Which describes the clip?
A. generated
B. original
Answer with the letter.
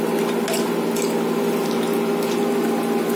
B